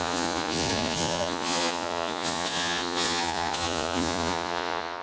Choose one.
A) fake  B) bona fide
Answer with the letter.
A